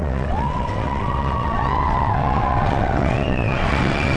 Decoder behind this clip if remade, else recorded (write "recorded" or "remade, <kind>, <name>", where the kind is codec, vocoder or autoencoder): remade, vocoder, WaveNeXt